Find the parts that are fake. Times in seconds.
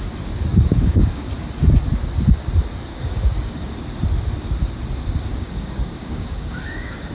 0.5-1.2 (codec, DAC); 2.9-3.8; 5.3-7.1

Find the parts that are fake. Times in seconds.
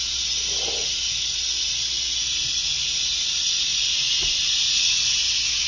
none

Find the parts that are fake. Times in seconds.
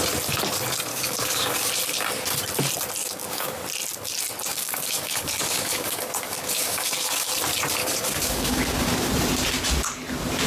0.9-1.7 (codec, DAC); 3.0-3.5; 4.5-7.3; 7.8-9.1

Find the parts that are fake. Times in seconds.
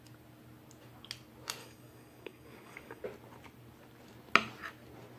1.6-3.0 (codec, DAC)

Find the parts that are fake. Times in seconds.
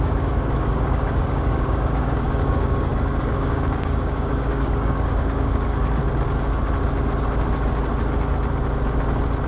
0.0-6.0 (codec, DAC)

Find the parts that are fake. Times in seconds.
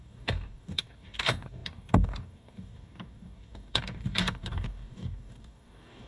0.0-6.1 (codec, DAC)